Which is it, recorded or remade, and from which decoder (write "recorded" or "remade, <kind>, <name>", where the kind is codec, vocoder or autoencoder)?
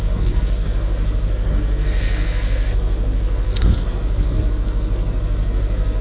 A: remade, codec, SNAC